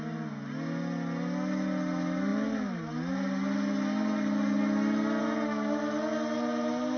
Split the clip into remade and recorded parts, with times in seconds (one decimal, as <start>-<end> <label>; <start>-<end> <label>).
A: 0.0-7.0 recorded